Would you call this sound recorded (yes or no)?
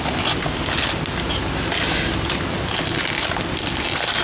yes